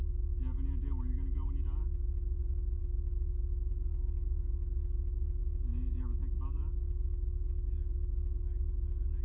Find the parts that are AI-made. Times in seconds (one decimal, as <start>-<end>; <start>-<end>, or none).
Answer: 1.8-2.4; 2.8-3.7; 5.4-8.4